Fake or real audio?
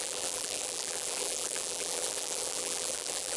fake